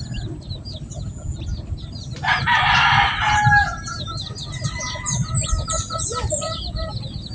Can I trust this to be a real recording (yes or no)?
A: yes